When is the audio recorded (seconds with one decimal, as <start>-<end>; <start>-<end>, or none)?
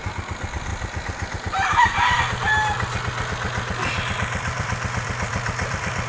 0.0-0.7; 2.2-3.8